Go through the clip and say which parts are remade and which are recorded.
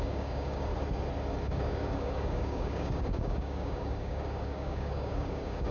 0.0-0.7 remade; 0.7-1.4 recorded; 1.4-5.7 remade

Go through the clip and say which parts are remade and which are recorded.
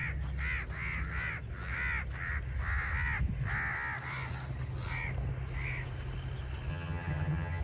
0.0-6.7 recorded; 6.7-7.6 remade